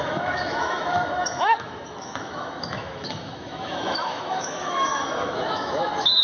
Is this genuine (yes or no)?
no